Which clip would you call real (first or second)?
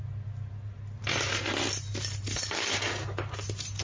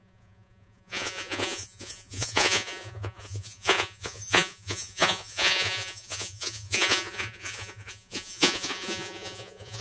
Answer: first